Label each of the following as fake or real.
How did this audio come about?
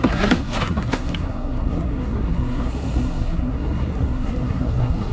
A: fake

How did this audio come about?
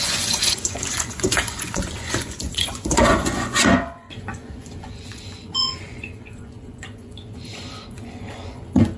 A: fake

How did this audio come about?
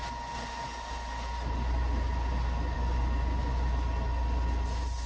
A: real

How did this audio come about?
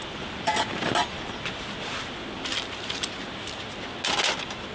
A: real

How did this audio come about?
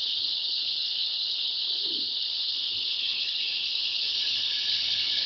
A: fake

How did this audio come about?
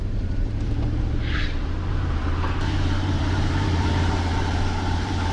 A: fake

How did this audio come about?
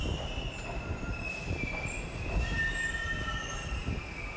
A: fake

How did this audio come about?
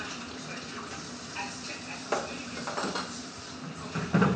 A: real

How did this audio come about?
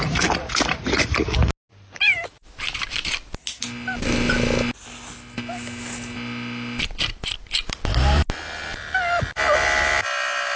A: real